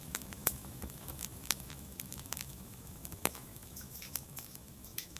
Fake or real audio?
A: fake